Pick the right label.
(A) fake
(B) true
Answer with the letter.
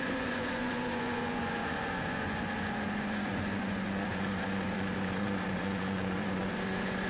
A